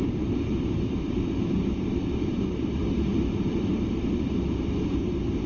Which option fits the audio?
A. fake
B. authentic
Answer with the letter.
A